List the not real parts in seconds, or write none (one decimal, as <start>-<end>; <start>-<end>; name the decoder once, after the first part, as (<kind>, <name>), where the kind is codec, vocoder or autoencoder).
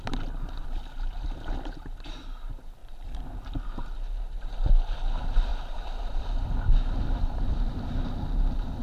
2.8-3.5 (vocoder, BigVGAN v2); 5.5-6.2